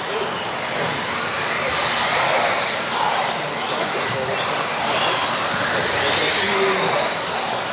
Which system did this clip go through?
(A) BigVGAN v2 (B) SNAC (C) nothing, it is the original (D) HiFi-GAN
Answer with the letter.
C